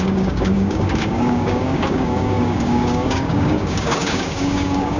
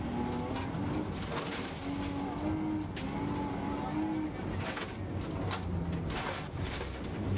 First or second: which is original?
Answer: second